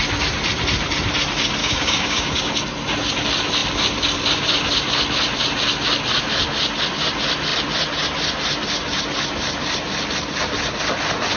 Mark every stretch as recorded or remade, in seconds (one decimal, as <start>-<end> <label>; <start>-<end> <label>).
0.0-1.6 recorded; 1.6-2.5 remade; 2.5-11.4 recorded